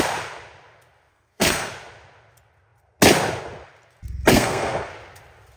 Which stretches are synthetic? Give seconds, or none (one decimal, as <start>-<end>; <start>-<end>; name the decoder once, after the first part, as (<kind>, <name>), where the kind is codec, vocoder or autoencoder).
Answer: 1.1-1.7 (codec, SNAC); 4.3-4.9